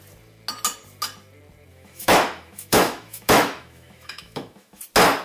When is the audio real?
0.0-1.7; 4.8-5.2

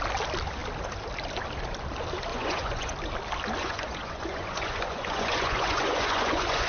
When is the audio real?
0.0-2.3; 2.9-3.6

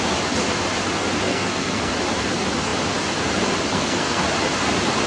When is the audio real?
0.0-1.3; 1.9-3.7; 4.2-5.1

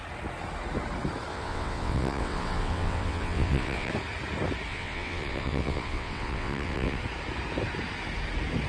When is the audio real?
0.0-1.3; 3.9-4.7; 7.0-8.7